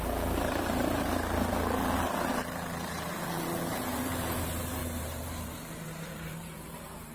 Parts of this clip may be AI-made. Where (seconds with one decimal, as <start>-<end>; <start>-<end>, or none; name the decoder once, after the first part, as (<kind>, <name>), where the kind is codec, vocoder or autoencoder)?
0.0-7.1 (vocoder, BigVGAN v2)